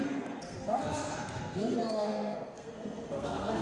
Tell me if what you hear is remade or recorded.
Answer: remade